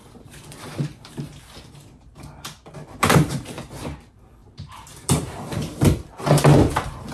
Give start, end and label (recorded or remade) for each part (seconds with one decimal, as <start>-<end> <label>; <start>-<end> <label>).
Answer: 0.0-1.4 remade; 1.4-4.4 recorded; 4.4-5.4 remade; 5.4-7.1 recorded